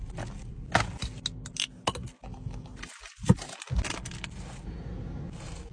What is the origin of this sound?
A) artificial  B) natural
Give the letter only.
B